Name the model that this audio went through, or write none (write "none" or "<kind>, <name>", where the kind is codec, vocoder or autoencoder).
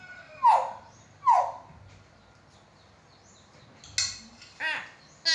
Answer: none